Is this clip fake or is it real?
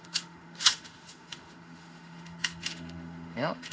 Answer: fake